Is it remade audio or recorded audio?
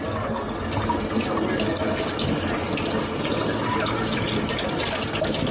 recorded